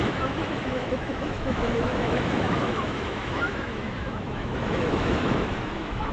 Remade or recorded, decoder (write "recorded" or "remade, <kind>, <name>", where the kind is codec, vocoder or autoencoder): remade, autoencoder, DAC-VAE